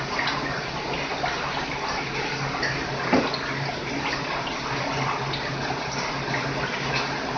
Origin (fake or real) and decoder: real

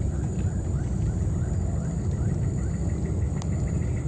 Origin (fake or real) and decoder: real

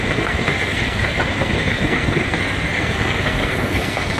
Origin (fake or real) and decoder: fake, codec, SNAC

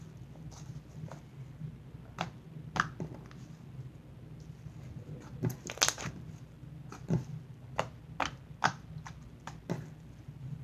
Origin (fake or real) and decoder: real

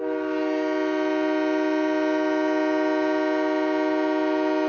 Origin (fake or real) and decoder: real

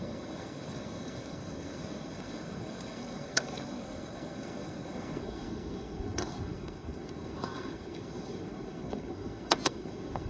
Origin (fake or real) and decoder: fake, codec, SNAC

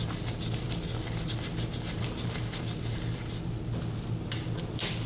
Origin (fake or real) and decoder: real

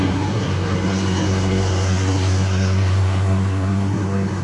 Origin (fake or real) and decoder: fake, codec, SNAC